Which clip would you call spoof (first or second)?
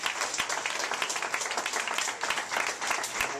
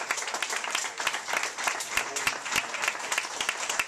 second